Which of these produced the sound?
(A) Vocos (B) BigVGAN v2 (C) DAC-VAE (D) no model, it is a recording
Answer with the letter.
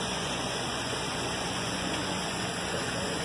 A